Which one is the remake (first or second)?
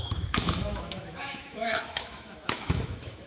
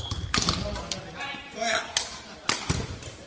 first